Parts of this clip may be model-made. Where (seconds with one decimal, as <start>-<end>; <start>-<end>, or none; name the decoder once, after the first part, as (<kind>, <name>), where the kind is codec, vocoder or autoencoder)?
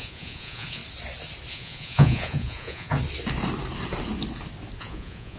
0.0-0.8 (vocoder, Vocos); 1.5-2.9; 4.8-5.4